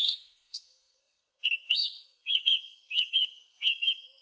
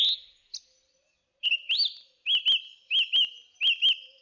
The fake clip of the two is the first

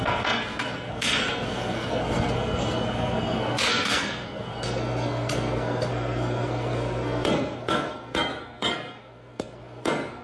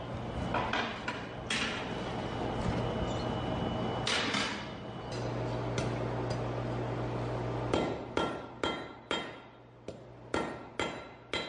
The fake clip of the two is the first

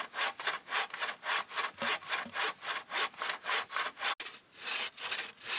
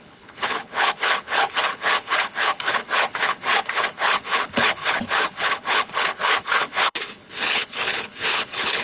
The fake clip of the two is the second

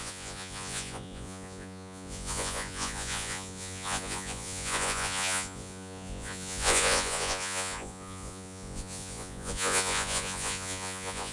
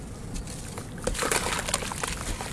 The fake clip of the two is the first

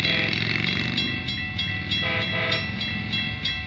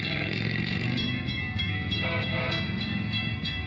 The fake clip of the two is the second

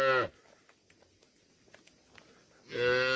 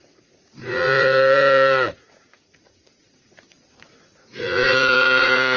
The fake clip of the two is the second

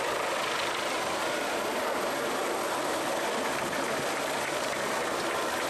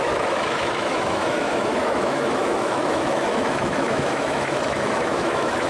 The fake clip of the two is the second